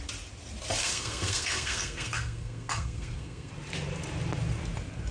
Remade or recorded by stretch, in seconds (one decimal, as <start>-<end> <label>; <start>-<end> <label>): 0.0-0.8 recorded; 0.8-3.5 remade; 3.5-5.1 recorded